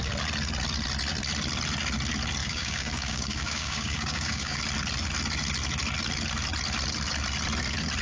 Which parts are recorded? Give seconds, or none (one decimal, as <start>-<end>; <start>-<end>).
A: 0.0-2.4; 4.6-8.0